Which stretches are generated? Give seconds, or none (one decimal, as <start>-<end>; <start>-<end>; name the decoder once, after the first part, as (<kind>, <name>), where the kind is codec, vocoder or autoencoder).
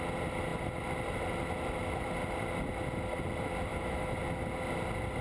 3.7-4.2 (autoencoder, DAC-VAE)